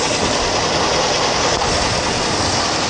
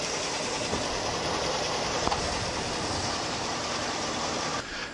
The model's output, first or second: second